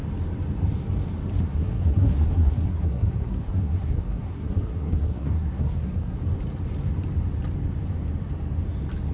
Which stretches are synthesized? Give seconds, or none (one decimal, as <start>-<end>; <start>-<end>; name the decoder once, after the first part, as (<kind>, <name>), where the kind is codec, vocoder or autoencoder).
1.4-6.2 (codec, SNAC)